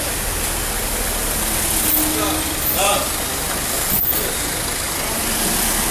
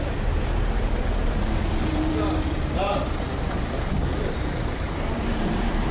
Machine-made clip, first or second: second